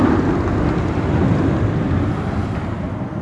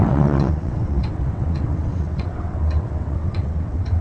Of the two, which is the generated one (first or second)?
second